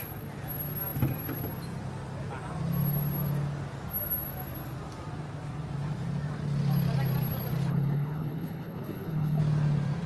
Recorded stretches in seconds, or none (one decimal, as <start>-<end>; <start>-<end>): 0.0-7.7; 9.4-10.1